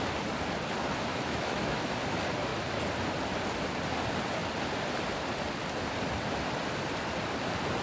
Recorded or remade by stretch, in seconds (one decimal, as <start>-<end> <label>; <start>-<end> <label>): 0.0-1.1 recorded; 1.1-1.9 remade; 1.9-7.8 recorded